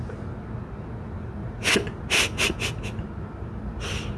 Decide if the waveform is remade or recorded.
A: recorded